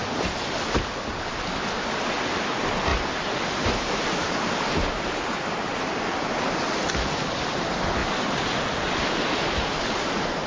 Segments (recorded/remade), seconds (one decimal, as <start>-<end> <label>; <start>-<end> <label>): 0.0-2.9 recorded; 2.9-6.0 remade; 6.0-10.5 recorded